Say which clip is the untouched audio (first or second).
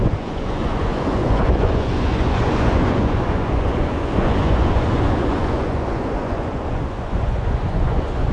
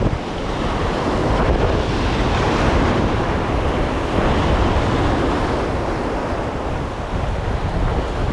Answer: second